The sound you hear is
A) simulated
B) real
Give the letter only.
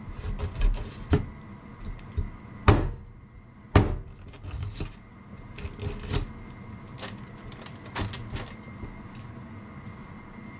B